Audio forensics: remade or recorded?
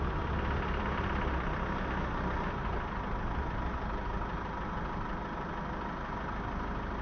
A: recorded